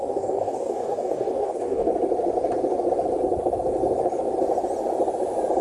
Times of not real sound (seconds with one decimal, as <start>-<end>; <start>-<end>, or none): 0.0-1.9